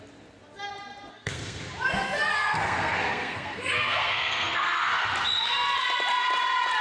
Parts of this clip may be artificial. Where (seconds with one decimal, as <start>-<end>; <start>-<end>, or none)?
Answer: 1.1-1.6; 2.3-5.0